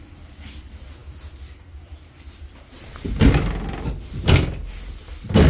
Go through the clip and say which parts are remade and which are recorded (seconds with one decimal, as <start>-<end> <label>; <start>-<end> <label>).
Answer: 0.0-5.5 recorded